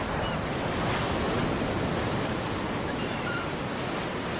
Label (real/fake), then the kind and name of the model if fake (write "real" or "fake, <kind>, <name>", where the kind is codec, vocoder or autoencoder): real